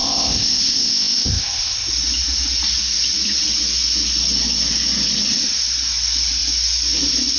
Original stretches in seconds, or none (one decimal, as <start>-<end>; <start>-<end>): 1.9-7.4